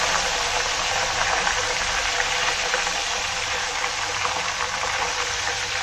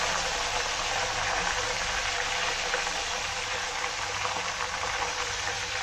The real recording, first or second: second